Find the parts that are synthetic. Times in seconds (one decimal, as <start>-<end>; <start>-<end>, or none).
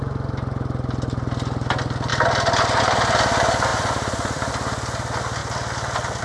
3.7-4.5